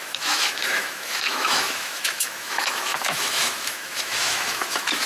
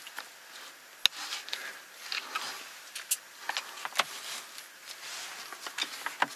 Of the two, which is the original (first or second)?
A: second